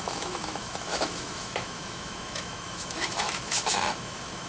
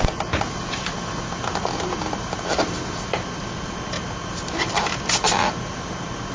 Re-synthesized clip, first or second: first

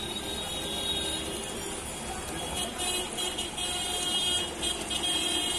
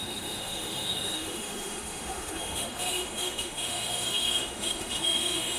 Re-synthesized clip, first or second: second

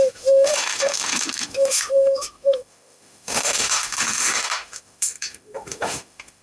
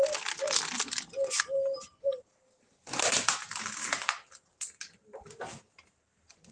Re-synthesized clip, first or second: first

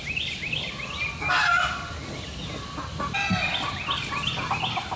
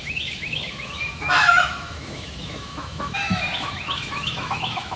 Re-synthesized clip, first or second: second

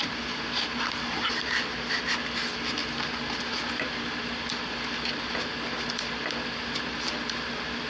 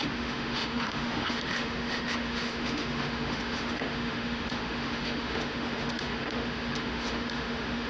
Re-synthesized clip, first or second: second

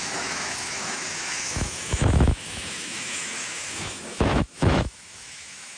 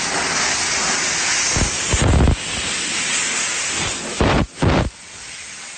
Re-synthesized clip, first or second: first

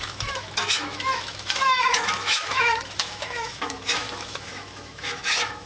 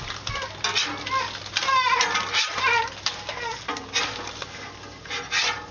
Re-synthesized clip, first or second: first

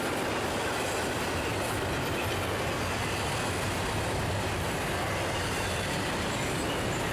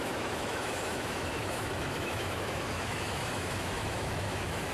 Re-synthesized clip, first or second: second